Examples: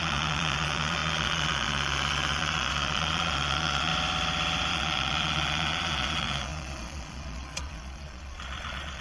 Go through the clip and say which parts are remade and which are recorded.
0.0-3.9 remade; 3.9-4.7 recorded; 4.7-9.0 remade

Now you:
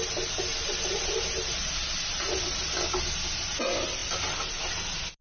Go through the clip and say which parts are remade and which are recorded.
0.0-5.2 recorded

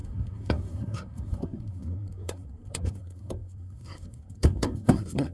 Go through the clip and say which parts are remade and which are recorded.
0.0-5.3 remade

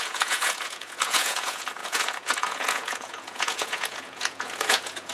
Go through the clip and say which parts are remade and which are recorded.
0.0-5.1 remade